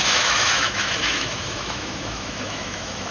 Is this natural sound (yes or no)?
no